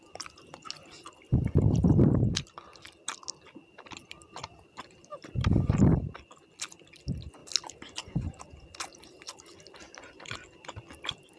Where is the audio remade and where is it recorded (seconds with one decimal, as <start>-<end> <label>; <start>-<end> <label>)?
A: 0.0-11.4 recorded